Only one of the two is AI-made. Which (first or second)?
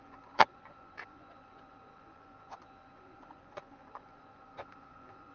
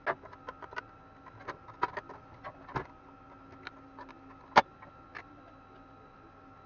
first